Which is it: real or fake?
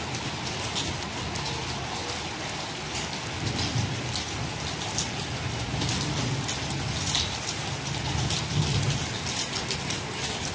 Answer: real